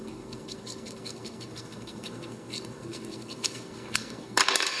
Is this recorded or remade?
remade